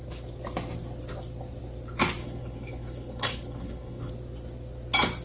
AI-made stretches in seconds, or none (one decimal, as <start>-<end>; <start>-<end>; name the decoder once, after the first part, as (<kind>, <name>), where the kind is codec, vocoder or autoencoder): 2.2-4.1 (codec, HILCodec)